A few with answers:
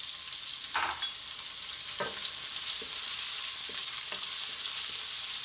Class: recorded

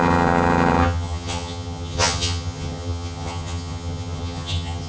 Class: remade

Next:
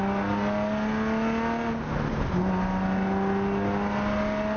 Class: recorded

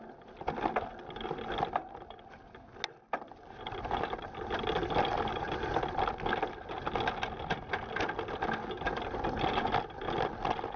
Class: recorded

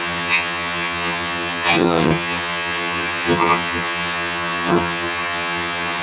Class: remade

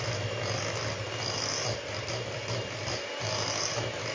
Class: recorded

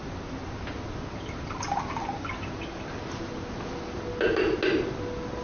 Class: recorded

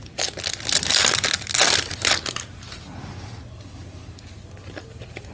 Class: recorded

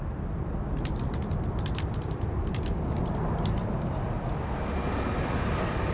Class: recorded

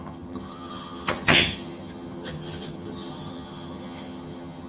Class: remade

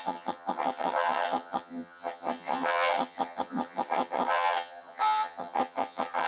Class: remade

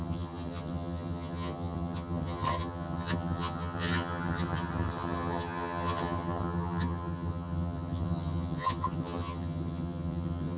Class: remade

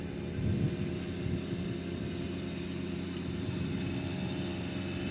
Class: recorded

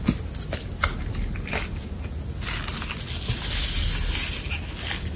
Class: recorded